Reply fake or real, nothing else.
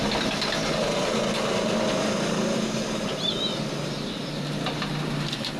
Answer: real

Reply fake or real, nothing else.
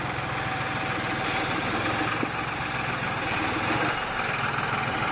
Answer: real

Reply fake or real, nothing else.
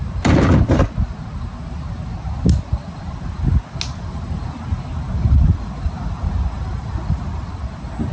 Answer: real